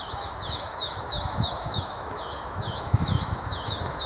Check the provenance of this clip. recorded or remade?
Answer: remade